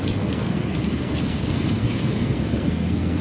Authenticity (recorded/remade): remade